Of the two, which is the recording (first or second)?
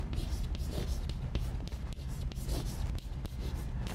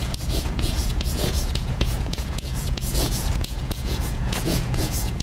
first